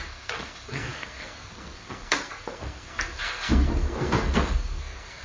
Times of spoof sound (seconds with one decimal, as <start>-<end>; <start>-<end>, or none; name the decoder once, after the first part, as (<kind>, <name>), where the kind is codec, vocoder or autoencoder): 0.0-5.2 (codec, SNAC)